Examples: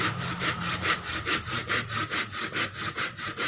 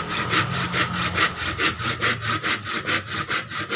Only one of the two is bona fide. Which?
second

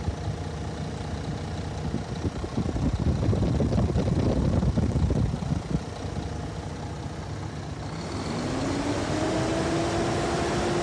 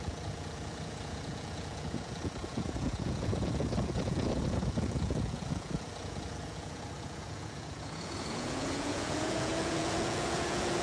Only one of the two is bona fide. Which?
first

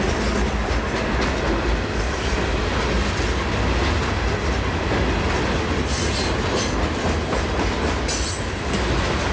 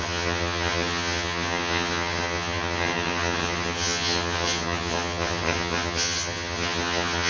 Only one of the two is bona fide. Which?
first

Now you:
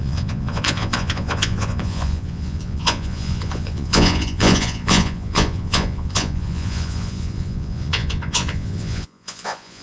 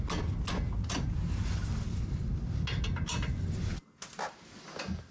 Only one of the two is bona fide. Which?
second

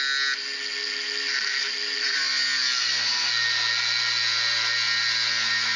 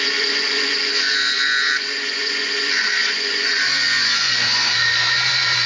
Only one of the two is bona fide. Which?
first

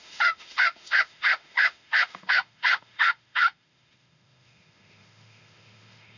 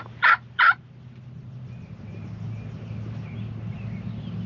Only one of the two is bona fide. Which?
second